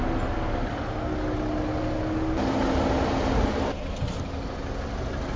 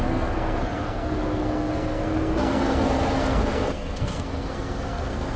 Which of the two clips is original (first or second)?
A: first